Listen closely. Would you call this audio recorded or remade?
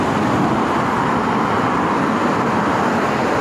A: recorded